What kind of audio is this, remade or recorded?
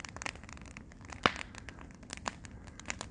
remade